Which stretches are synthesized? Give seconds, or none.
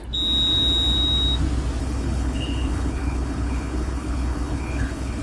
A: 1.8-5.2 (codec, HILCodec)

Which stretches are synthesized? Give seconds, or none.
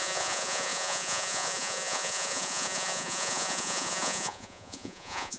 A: 0.0-5.4 (vocoder, Vocos)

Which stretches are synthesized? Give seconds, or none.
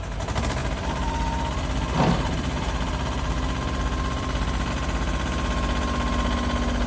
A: 0.6-4.7 (vocoder, BigVGAN v2)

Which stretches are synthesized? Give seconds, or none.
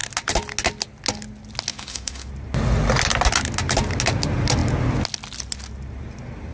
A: 1.7-2.3 (autoencoder, DAC-VAE)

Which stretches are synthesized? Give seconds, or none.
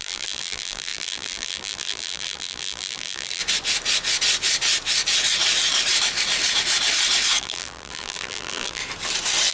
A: 0.0-3.4 (vocoder, BigVGAN v2); 7.4-8.8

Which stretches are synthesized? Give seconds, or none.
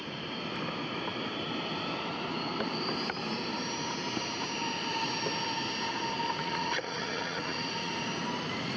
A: 6.4-7.9 (vocoder, Vocos)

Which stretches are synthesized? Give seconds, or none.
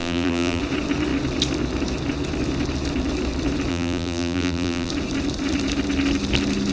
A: 0.0-0.6 (vocoder, BigVGAN v2); 3.7-4.9